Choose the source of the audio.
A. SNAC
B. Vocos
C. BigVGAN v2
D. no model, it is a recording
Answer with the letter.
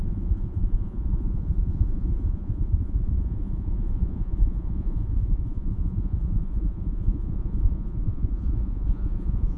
B